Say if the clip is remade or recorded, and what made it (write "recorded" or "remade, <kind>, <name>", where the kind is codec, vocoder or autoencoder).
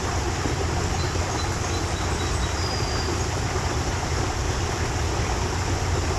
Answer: recorded